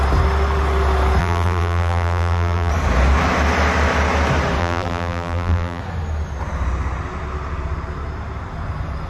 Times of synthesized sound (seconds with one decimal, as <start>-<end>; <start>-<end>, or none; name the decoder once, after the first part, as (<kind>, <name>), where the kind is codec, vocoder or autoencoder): 1.2-2.7 (vocoder, BigVGAN v2); 4.6-5.8